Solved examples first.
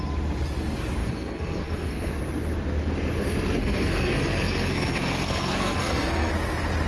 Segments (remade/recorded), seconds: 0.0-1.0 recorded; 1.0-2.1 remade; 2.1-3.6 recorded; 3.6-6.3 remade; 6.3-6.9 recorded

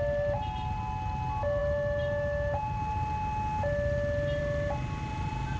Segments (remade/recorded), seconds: 0.0-5.6 recorded

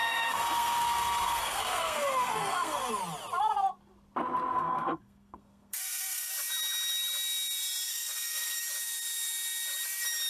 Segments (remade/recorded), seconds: 0.0-2.9 remade; 2.9-4.5 recorded; 4.5-6.3 remade; 6.3-7.9 recorded; 7.9-8.6 remade; 8.6-10.3 recorded

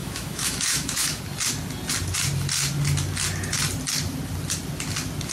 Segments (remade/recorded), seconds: 0.0-1.2 remade; 1.2-5.3 recorded

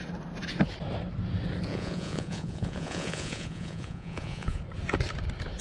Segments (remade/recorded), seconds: 0.0-1.7 recorded; 1.7-4.6 remade; 4.6-5.6 recorded